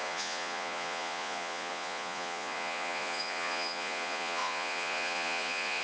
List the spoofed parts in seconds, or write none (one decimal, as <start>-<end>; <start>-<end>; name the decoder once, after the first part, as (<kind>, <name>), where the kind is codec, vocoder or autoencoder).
0.0-5.8 (vocoder, Vocos)